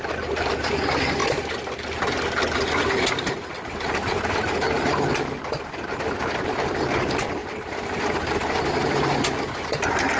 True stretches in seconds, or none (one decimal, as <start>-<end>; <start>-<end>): 0.0-10.2